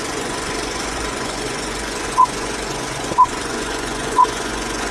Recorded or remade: remade